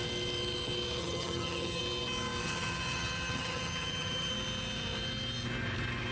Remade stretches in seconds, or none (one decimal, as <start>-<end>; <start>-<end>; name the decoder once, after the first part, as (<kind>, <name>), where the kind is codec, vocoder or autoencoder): 1.0-1.8 (vocoder, HiFi-GAN); 2.4-4.3